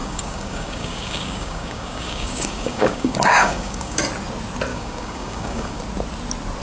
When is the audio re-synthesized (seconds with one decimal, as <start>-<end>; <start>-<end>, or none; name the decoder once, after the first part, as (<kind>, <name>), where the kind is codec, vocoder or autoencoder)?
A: 0.0-4.0 (codec, DAC); 4.7-5.8